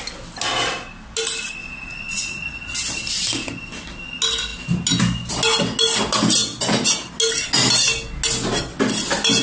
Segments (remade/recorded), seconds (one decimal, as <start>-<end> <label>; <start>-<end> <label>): 0.0-1.6 recorded; 1.6-2.7 remade; 2.7-9.4 recorded